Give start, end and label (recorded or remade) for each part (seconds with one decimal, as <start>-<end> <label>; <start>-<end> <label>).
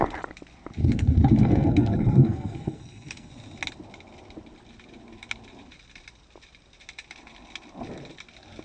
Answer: 0.0-0.8 recorded; 0.8-3.3 remade; 3.3-8.6 recorded